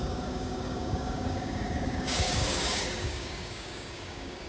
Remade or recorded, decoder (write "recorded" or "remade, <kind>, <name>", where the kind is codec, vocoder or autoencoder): remade, codec, DAC